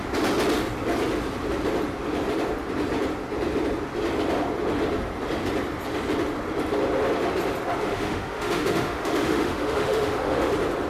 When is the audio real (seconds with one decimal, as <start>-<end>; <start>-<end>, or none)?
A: 0.0-7.9; 10.5-10.9